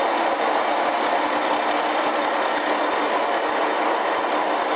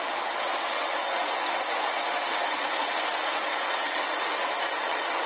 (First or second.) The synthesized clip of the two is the second